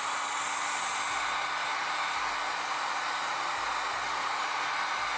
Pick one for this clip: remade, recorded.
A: recorded